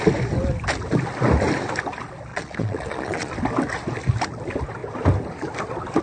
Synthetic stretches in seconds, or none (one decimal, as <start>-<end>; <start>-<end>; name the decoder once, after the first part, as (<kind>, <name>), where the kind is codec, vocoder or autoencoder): 2.3-3.3 (vocoder, Vocos)